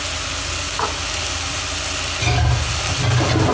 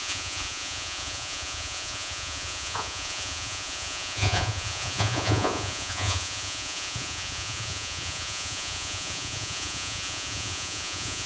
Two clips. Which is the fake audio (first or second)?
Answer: second